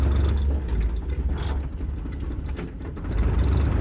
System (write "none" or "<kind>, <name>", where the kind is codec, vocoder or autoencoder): none